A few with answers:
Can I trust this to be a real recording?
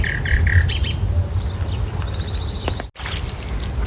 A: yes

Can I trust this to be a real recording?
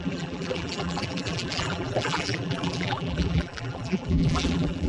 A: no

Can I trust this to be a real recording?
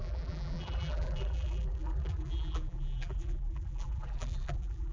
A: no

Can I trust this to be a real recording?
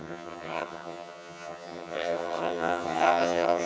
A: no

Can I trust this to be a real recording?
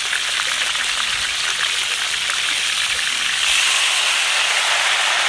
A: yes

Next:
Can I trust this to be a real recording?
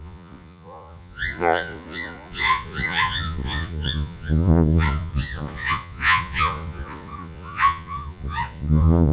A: no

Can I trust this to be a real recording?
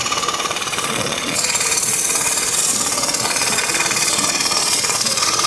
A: no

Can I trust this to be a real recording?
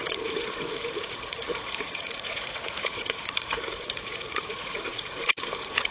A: no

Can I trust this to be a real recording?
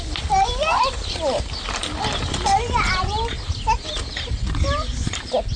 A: yes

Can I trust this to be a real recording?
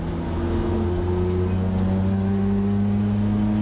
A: yes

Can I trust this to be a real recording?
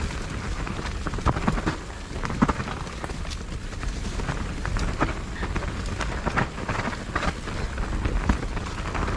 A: yes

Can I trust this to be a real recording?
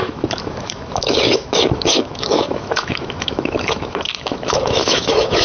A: no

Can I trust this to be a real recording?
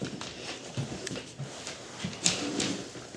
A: yes